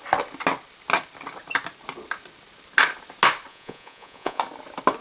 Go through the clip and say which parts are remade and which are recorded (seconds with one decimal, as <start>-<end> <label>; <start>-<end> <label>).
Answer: 0.0-3.5 recorded; 3.5-4.4 remade; 4.4-5.0 recorded